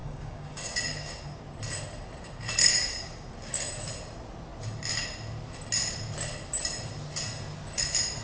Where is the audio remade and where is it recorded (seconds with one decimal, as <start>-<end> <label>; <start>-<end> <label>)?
0.0-1.4 remade; 1.4-2.6 recorded; 2.6-3.3 remade; 3.3-8.2 recorded